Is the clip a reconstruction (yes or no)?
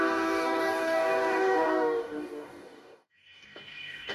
yes